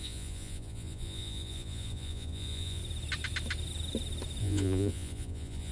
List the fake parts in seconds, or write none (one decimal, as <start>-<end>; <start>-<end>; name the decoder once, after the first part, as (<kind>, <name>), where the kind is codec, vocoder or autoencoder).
0.0-2.8 (vocoder, Vocos); 4.4-5.7